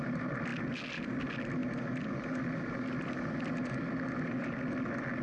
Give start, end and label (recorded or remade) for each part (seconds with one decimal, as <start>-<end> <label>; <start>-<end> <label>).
0.0-5.2 recorded